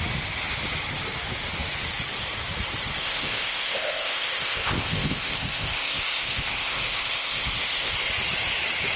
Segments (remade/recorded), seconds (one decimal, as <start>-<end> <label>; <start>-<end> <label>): 0.0-3.0 recorded; 3.0-8.1 remade; 8.1-9.0 recorded